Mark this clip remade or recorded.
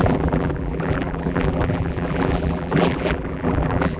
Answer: remade